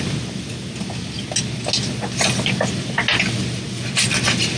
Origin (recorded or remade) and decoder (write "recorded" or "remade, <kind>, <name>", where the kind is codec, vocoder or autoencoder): recorded